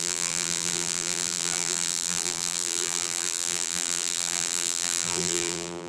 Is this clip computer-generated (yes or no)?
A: yes